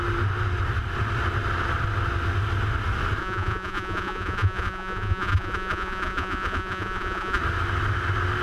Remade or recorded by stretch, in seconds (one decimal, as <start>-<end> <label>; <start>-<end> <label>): 0.0-3.2 recorded; 3.2-7.4 remade; 7.4-8.4 recorded